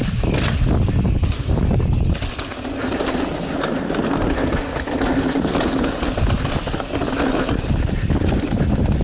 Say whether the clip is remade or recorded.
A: recorded